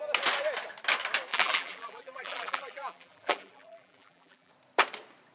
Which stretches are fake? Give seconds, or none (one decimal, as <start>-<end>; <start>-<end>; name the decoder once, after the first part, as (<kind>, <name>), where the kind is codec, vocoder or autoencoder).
1.3-4.5 (vocoder, BigVGAN v2)